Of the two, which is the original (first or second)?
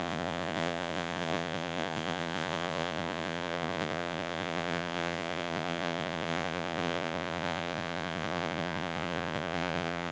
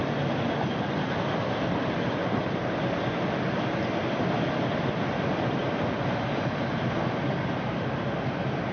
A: second